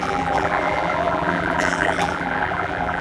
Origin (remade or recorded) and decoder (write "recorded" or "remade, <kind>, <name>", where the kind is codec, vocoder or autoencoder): remade, vocoder, BigVGAN v2